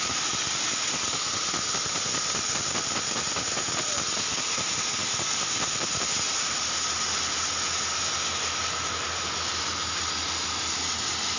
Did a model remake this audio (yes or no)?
no